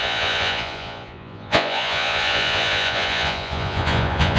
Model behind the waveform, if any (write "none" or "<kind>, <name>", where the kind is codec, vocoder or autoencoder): vocoder, Vocos